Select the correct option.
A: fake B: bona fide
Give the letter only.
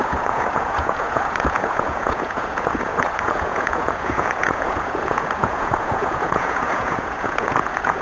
A